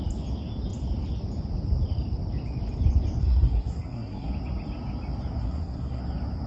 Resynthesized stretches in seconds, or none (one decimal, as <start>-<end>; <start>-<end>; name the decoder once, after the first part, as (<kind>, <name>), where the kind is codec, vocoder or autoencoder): 3.2-4.3 (codec, SNAC); 5.4-6.0